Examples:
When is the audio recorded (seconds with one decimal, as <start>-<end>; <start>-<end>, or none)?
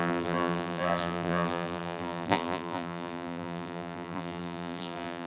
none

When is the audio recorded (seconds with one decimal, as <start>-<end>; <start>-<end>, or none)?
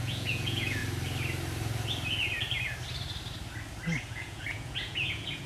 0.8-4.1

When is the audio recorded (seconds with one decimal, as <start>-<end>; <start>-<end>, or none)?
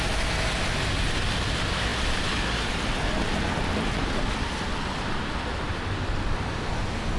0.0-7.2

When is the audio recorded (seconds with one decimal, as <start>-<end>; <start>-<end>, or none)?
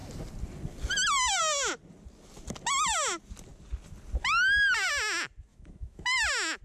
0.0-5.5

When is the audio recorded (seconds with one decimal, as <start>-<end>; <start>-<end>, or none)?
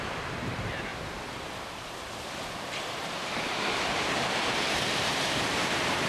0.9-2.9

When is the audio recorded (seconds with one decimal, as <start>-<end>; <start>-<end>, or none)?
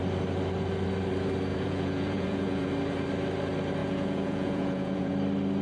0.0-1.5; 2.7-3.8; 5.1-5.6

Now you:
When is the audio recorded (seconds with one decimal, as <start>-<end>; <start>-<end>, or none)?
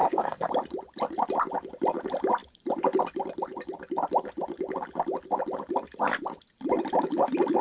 0.5-7.6